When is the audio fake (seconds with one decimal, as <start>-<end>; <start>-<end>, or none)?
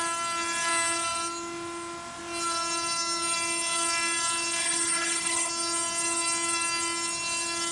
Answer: 4.6-5.5